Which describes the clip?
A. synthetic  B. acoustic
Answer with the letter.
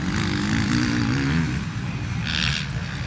B